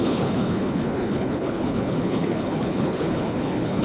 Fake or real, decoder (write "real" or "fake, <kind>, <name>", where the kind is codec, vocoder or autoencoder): fake, codec, HILCodec